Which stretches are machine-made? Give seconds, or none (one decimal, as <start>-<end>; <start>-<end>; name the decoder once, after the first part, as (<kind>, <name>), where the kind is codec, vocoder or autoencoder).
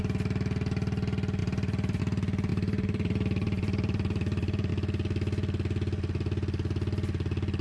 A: 1.4-2.0 (vocoder, BigVGAN v2); 2.5-4.7